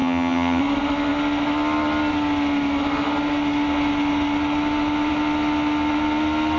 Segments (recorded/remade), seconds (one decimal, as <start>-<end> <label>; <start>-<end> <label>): 0.0-0.6 remade; 0.6-6.6 recorded